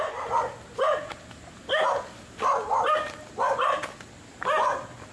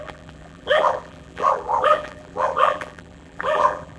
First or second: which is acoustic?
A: first